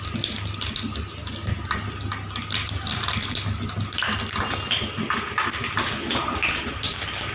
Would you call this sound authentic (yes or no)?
yes